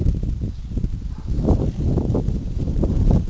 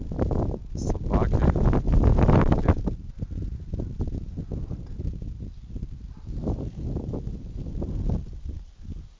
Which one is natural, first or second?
second